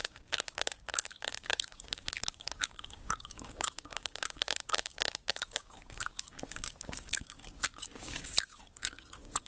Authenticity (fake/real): fake